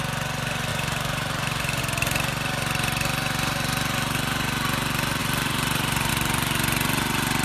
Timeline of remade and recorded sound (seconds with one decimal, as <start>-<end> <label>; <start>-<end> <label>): 0.0-0.7 recorded; 0.7-1.8 remade; 1.8-5.2 recorded; 5.2-6.1 remade; 6.1-7.4 recorded